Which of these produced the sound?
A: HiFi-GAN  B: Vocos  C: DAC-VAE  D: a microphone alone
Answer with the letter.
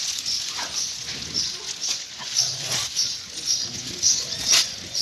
B